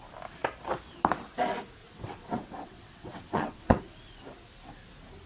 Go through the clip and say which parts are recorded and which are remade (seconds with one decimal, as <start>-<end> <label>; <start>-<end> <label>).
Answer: 0.0-1.8 recorded; 1.8-3.8 remade; 3.8-5.3 recorded